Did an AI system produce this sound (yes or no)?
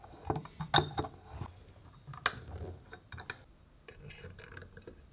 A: no